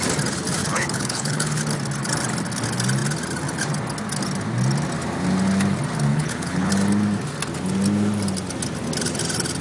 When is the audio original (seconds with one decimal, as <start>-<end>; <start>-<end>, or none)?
0.0-0.6; 1.6-6.1; 6.7-9.6